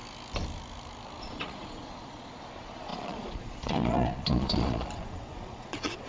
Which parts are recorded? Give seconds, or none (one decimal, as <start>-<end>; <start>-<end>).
0.0-1.2